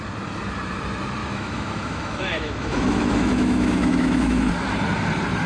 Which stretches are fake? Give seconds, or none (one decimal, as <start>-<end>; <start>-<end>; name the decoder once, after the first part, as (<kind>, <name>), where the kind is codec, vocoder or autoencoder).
1.2-4.5 (autoencoder, DAC-VAE)